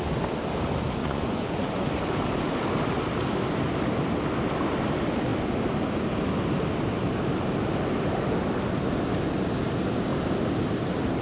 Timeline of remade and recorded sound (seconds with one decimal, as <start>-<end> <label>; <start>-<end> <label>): 0.0-1.0 recorded; 1.0-2.0 remade; 2.0-11.2 recorded